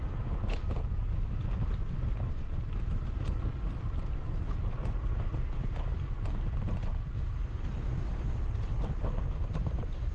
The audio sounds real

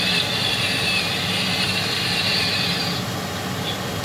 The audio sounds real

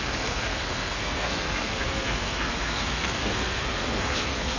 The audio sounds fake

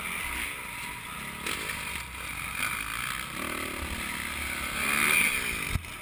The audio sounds real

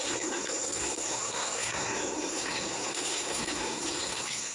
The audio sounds fake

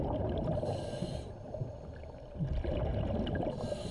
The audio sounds real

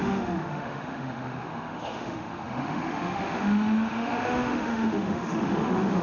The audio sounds fake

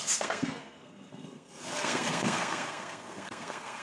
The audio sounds fake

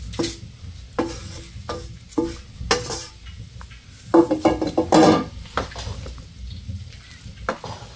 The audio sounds real